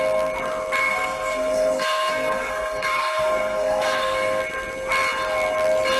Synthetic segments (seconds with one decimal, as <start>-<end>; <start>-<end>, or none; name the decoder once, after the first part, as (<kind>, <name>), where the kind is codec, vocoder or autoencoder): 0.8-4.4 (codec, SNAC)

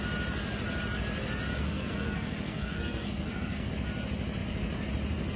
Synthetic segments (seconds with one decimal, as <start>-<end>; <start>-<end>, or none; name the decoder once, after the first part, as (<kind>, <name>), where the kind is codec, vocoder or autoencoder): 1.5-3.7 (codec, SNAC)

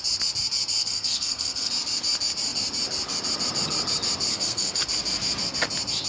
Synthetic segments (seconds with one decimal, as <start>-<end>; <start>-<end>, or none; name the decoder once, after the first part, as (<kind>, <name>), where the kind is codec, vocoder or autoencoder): 0.8-1.7 (codec, SNAC); 4.3-4.8